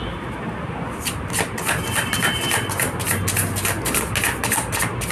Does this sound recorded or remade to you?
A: recorded